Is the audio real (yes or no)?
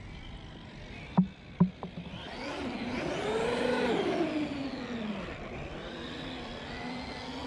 yes